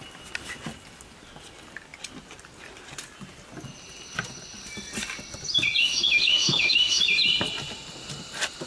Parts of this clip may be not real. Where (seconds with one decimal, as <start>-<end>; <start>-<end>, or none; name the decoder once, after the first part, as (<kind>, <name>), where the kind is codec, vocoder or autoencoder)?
5.8-7.0 (autoencoder, DAC-VAE)